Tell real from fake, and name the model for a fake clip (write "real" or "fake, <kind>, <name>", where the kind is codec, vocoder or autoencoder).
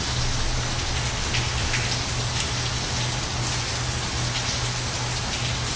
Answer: real